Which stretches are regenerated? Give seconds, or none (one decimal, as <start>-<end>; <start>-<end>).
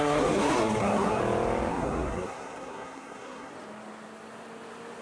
0.0-1.2; 1.7-3.5